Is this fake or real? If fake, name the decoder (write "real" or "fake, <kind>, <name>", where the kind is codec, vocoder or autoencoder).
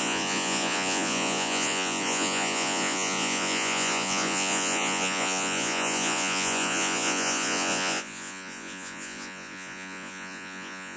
fake, vocoder, Vocos